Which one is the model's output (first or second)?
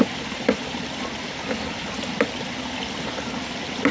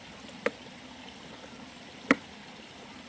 second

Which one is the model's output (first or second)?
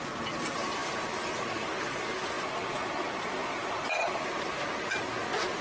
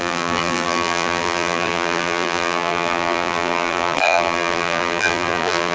second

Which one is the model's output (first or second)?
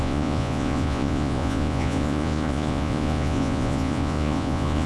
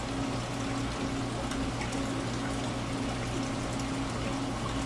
first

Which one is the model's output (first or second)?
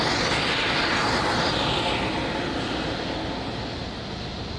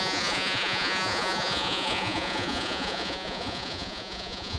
second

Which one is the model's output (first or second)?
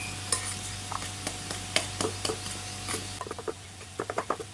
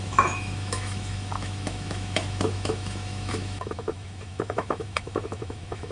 second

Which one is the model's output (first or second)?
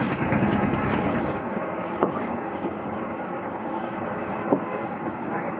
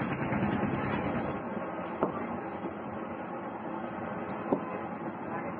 first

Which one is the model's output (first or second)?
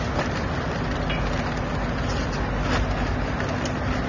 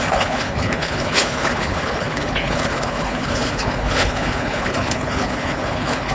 second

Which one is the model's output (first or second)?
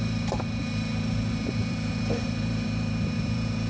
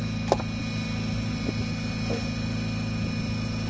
first